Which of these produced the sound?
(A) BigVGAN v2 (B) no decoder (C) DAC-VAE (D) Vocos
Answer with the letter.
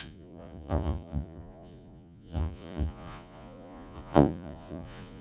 D